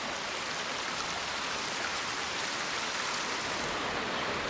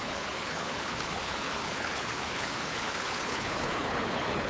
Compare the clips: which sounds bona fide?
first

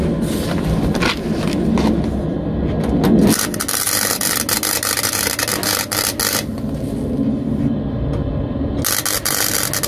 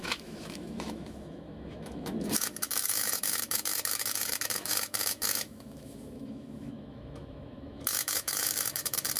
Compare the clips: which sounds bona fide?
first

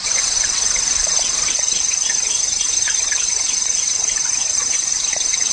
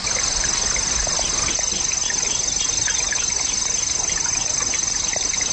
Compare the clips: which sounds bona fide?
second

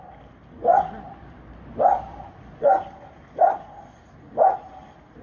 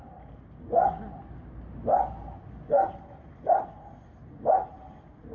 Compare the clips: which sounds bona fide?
second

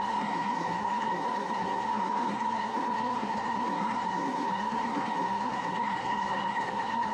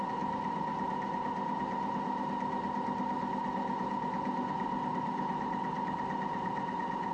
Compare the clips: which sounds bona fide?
second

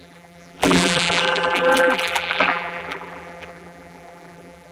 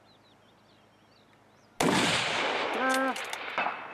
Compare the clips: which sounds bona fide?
second